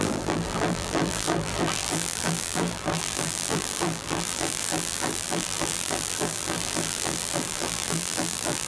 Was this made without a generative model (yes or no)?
no